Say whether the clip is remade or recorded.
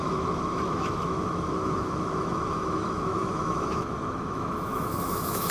remade